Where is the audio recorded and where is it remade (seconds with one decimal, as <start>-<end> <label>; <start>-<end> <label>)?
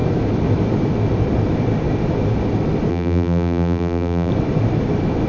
0.0-2.9 recorded; 2.9-4.3 remade; 4.3-5.3 recorded